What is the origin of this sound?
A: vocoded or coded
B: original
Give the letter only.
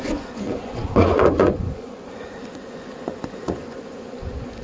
A